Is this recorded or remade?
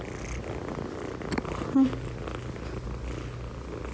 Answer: recorded